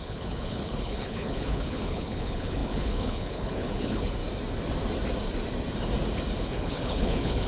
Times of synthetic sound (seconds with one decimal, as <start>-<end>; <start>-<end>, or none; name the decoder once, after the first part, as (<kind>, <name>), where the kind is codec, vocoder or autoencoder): 0.0-4.2 (codec, HILCodec); 6.4-7.5